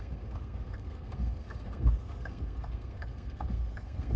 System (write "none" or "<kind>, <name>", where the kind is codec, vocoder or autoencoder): codec, SNAC